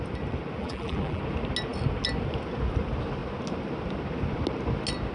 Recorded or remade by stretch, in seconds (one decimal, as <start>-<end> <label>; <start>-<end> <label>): 0.0-0.6 recorded; 0.6-1.2 remade; 1.2-5.1 recorded